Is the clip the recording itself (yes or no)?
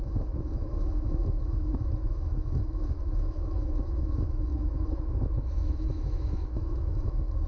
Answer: no